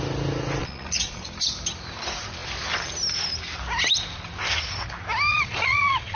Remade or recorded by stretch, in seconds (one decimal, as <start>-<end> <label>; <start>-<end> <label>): 0.0-0.6 recorded; 0.6-1.2 remade; 1.2-5.3 recorded; 5.3-6.2 remade